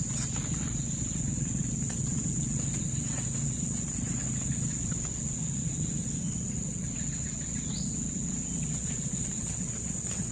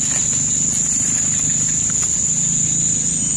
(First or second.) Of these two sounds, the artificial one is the first